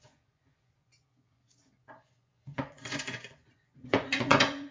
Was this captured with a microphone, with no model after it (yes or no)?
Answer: no